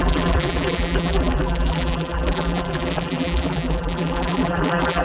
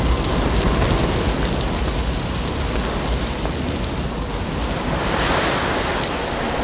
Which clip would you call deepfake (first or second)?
first